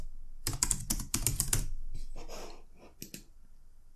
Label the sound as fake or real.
real